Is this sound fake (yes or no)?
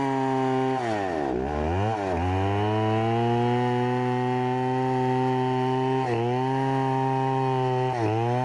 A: no